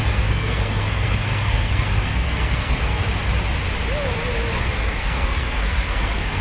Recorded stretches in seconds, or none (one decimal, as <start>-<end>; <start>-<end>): 3.0-4.6